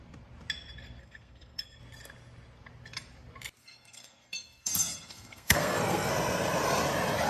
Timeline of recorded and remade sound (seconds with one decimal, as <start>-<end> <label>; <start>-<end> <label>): 0.0-1.0 recorded; 1.0-1.8 remade; 1.8-3.6 recorded; 3.6-6.1 remade; 6.1-7.3 recorded

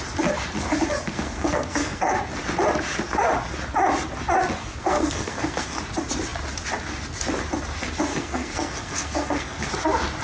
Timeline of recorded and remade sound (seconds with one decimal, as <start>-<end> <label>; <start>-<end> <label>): 0.0-1.1 recorded; 1.1-2.2 remade; 2.2-4.6 recorded; 4.6-5.8 remade; 5.8-8.1 recorded; 8.1-9.7 remade; 9.7-10.2 recorded

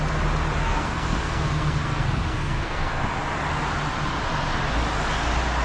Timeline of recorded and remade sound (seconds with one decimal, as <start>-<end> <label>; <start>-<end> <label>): 0.0-0.6 recorded; 0.6-3.0 remade; 3.0-5.6 recorded

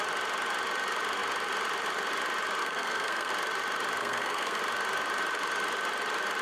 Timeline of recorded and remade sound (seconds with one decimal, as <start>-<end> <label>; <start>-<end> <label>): 0.0-2.6 recorded; 2.6-3.3 remade; 3.3-4.0 recorded; 4.0-4.6 remade; 4.6-6.4 recorded